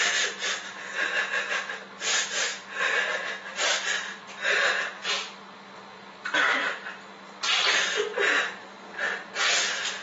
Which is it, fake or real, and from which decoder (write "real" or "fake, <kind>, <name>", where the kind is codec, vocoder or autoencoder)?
real